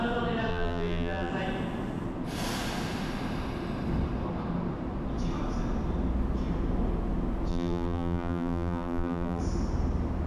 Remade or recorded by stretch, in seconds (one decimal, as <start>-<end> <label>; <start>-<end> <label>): 0.0-0.5 recorded; 0.5-1.3 remade; 1.3-7.5 recorded; 7.5-9.4 remade; 9.4-10.3 recorded